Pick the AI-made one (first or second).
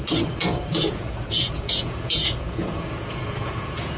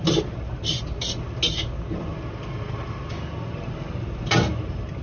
first